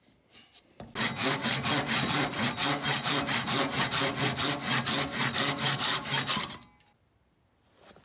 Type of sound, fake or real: real